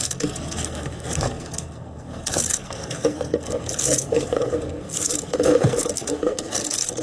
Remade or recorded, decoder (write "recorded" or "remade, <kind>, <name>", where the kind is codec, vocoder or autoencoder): remade, codec, SNAC